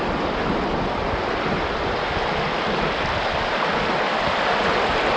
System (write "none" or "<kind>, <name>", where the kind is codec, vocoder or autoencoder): none